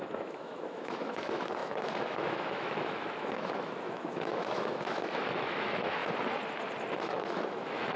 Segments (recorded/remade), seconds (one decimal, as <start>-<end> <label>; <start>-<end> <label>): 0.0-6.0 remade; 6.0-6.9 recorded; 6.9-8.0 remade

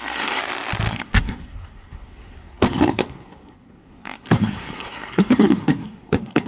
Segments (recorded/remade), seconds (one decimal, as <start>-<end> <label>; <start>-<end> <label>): 0.0-0.4 remade; 0.4-0.9 recorded; 0.9-6.5 remade

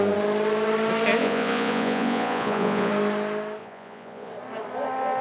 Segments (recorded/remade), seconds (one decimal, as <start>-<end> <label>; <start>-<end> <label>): 0.0-1.2 recorded; 1.2-2.9 remade; 2.9-3.6 recorded; 3.6-4.3 remade; 4.3-5.2 recorded

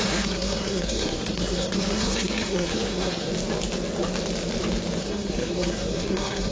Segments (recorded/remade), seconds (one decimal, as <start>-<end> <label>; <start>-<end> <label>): 0.0-3.3 remade; 3.3-5.0 recorded; 5.0-6.5 remade

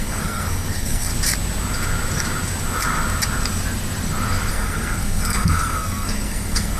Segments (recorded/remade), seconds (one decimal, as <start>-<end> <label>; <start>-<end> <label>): 0.0-1.1 remade; 1.1-4.5 recorded; 4.5-6.8 remade